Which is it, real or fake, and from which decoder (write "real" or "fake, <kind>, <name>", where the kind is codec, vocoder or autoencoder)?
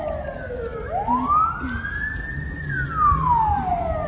real